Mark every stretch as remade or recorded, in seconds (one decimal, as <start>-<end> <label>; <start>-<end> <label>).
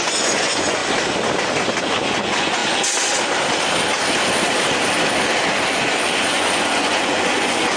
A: 0.0-0.8 remade; 0.8-1.8 recorded; 1.8-2.6 remade; 2.6-5.7 recorded; 5.7-7.8 remade